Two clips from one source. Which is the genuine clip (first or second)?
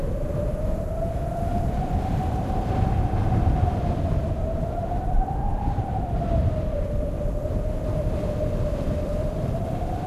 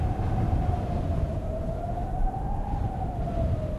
second